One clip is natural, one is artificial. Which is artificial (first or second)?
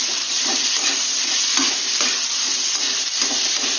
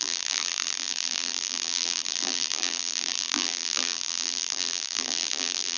second